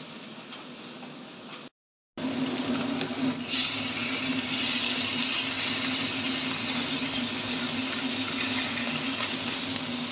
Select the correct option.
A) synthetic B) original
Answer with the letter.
B